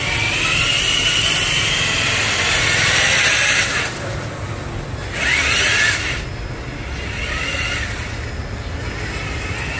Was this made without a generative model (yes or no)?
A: yes